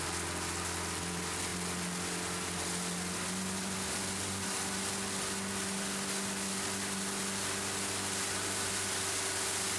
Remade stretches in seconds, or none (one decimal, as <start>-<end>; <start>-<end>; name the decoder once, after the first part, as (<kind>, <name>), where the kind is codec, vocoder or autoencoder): none